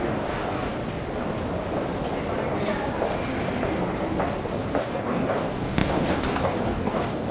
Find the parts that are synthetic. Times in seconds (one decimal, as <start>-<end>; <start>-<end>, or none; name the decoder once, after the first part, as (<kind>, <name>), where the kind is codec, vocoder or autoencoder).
0.0-0.7 (codec, DAC); 4.8-7.3